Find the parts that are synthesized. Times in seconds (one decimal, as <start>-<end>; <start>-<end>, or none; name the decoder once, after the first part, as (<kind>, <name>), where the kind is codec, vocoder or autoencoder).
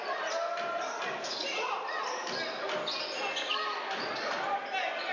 none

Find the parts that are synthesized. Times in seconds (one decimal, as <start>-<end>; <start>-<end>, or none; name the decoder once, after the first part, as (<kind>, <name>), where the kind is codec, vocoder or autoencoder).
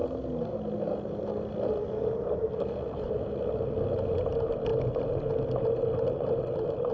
none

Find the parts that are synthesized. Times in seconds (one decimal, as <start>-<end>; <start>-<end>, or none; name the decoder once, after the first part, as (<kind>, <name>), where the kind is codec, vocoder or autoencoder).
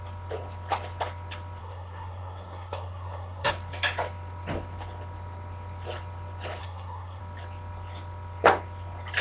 1.6-3.5 (codec, SNAC); 6.6-7.2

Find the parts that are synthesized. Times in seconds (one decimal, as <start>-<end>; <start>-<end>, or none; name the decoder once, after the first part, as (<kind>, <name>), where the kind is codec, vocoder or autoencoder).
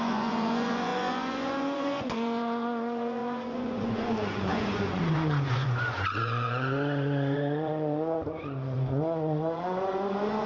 0.0-10.5 (vocoder, Vocos)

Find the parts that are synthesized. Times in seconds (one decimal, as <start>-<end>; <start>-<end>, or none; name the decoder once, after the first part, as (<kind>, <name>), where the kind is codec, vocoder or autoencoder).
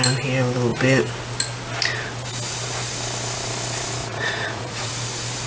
4.0-4.9 (vocoder, Vocos)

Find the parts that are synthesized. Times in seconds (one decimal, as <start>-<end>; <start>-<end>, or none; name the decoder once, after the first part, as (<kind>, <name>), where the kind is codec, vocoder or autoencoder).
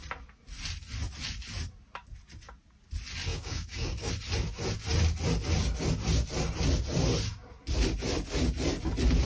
3.3-4.1 (codec, DAC)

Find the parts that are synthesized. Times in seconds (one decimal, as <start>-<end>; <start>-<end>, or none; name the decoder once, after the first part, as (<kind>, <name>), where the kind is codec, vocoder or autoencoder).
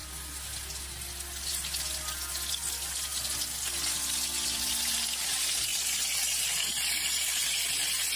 none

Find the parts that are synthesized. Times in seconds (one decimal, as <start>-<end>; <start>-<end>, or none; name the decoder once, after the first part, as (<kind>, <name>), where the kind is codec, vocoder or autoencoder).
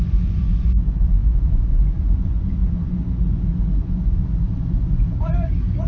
0.0-5.9 (vocoder, Vocos)